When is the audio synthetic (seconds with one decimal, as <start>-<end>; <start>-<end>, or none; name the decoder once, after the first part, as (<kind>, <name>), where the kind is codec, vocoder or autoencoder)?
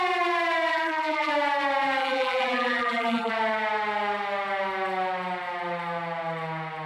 0.7-1.3 (vocoder, BigVGAN v2); 2.0-3.3